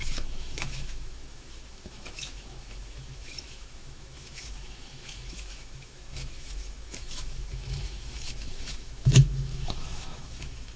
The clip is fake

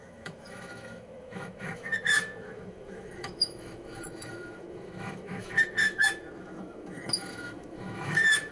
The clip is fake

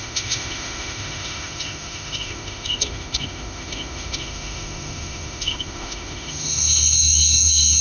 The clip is fake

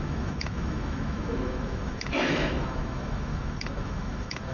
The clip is fake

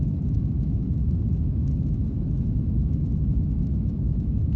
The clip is fake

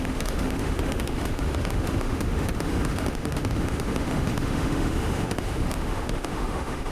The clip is fake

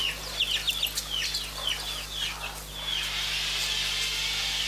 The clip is real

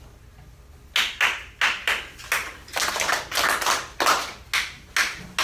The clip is real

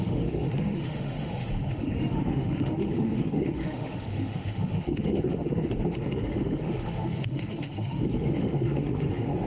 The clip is fake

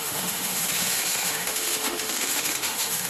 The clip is fake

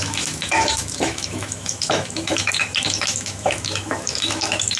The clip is fake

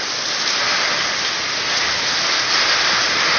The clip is real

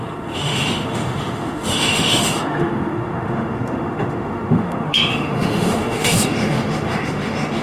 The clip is fake